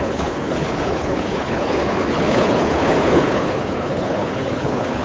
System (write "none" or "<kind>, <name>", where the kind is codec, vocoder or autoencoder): codec, HILCodec